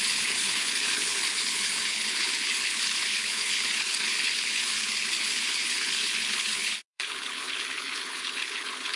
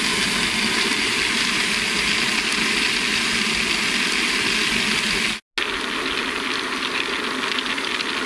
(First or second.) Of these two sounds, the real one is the second